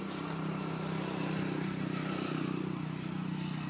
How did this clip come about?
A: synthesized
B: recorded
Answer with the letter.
B